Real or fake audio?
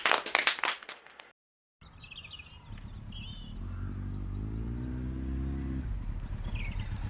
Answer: real